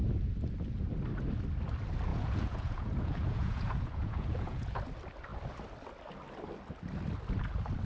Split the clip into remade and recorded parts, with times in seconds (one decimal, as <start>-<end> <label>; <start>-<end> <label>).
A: 0.0-2.1 recorded; 2.1-4.8 remade; 4.8-7.8 recorded